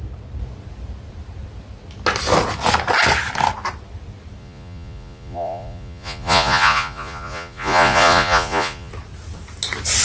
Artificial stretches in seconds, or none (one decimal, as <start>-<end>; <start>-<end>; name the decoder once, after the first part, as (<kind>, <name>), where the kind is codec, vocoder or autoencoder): 4.4-8.9 (vocoder, Vocos)